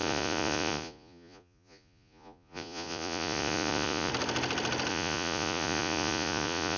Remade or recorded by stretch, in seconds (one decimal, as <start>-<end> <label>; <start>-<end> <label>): 0.0-4.1 remade; 4.1-4.9 recorded; 4.9-6.8 remade